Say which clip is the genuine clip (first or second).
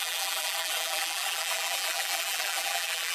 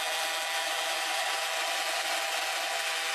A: second